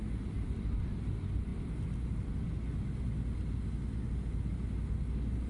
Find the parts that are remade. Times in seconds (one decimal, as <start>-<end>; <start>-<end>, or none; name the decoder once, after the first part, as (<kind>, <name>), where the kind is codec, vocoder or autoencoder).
none